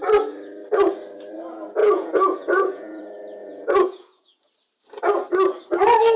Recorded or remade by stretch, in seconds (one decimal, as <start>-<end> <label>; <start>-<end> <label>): 0.0-1.8 recorded; 1.8-3.0 remade; 3.0-3.4 recorded; 3.4-4.5 remade; 4.5-6.2 recorded

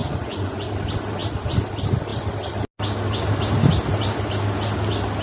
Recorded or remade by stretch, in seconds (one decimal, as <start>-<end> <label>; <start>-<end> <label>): 0.0-0.7 remade; 0.7-5.2 recorded